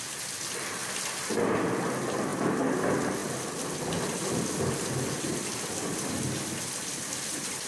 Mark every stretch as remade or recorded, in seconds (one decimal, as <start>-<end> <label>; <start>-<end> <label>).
0.0-7.7 recorded